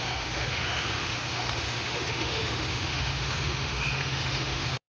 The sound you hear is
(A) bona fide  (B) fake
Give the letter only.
B